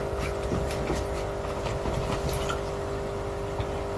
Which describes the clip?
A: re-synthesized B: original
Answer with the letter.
B